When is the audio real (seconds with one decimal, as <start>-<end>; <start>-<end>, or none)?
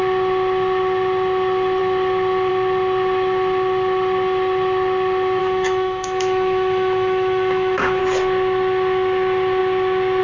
0.0-5.4; 8.0-10.2